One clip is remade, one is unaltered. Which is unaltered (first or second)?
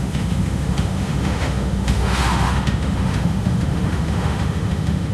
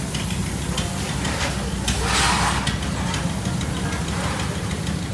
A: second